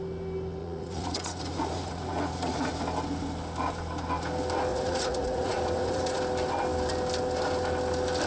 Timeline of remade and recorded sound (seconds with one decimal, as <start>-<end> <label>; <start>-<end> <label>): 0.0-0.6 recorded; 0.6-2.7 remade; 2.7-4.7 recorded; 4.7-6.2 remade; 6.2-8.3 recorded

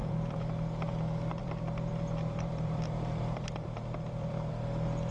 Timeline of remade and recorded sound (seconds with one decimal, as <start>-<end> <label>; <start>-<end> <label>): 0.0-0.5 remade; 0.5-1.4 recorded; 1.4-4.5 remade; 4.5-5.1 recorded

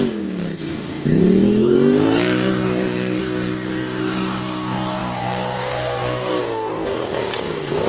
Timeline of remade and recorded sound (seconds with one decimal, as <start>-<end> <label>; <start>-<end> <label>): 0.0-7.9 remade

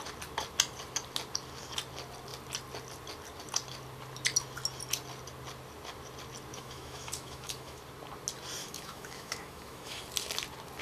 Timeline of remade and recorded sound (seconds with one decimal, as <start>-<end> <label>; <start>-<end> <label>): 0.0-6.5 recorded; 6.5-7.8 remade; 7.8-8.6 recorded; 8.6-10.0 remade; 10.0-10.8 recorded

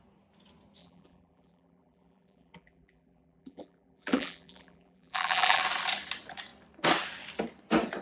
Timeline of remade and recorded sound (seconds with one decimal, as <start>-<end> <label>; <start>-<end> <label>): 0.0-0.8 recorded; 0.8-5.6 remade; 5.6-8.0 recorded

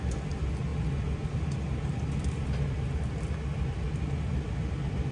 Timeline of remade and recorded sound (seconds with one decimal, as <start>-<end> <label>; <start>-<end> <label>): 0.0-5.1 recorded

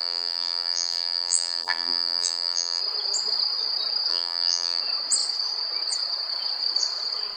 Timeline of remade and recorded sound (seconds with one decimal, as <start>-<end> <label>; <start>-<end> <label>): 0.0-2.8 remade; 2.8-4.1 recorded; 4.1-4.8 remade; 4.8-7.4 recorded